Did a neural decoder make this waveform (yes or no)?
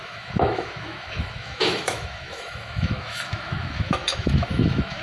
yes